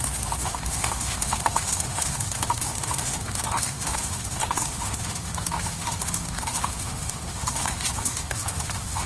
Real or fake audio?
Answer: fake